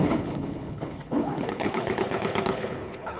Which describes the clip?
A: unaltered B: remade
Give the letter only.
B